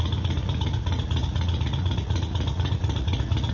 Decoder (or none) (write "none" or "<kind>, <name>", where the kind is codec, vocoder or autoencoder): vocoder, Vocos